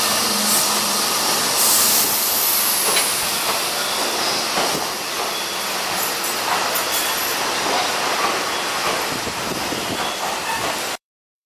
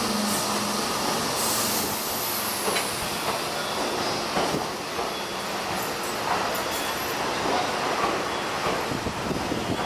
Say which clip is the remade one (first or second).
first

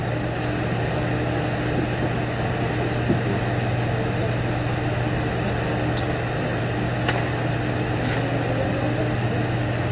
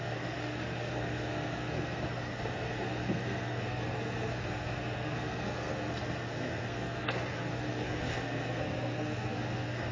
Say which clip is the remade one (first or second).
second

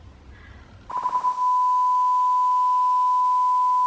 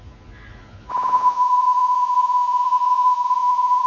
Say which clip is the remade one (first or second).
second